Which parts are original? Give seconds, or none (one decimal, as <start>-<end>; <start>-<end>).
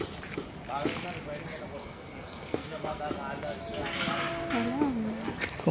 0.0-1.8; 3.0-5.7